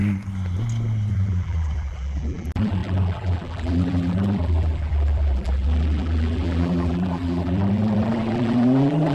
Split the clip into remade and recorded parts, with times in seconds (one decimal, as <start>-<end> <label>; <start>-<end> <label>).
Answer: 0.0-1.1 recorded; 1.1-9.1 remade